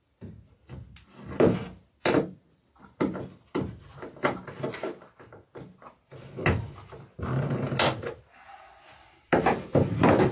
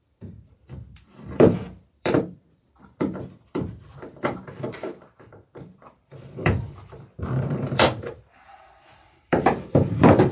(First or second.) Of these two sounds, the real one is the first